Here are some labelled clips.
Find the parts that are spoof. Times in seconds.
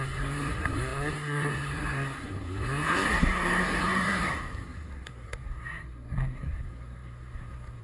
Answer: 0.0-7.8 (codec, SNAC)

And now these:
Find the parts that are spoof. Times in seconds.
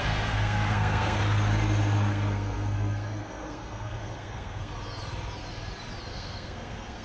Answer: 0.0-1.2 (codec, SNAC); 2.1-4.7; 6.1-7.0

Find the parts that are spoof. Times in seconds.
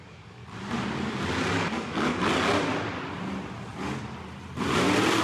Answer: 0.0-0.4 (codec, DAC); 1.5-2.3